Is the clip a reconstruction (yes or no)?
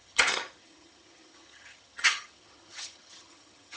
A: yes